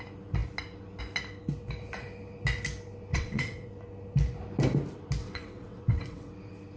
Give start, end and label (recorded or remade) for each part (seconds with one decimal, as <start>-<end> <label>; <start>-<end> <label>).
0.0-3.1 recorded; 3.1-3.7 remade; 3.7-5.2 recorded; 5.2-6.3 remade; 6.3-6.8 recorded